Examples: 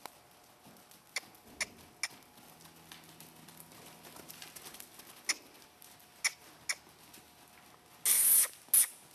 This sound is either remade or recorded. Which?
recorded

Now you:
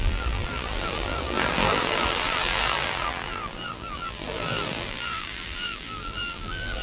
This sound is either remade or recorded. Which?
remade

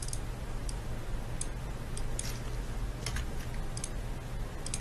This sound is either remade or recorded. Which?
recorded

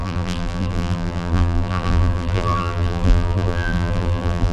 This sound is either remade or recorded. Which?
remade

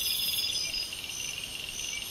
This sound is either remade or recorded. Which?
recorded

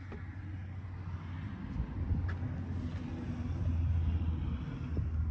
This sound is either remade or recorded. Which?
recorded